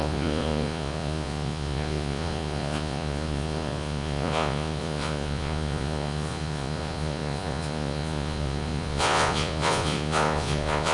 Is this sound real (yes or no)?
no